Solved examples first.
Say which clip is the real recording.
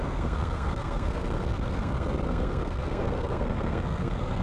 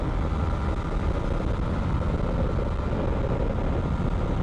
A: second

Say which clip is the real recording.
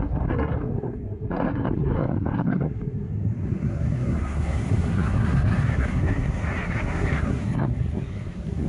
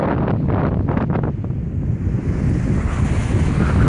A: second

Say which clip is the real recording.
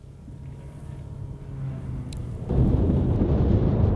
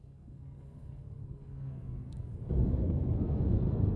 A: first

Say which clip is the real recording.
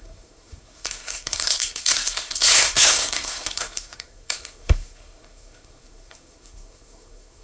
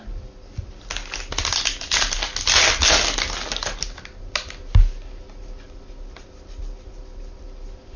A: second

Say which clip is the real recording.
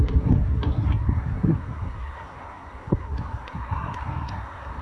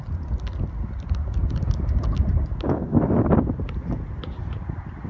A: second